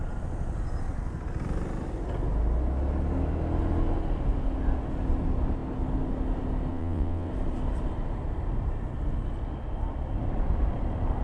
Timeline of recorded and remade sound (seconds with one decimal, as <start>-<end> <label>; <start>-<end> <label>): 0.0-6.7 recorded; 6.7-7.3 remade; 7.3-11.2 recorded